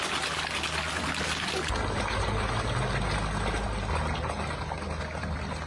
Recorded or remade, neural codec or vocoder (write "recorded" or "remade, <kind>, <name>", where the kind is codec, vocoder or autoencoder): recorded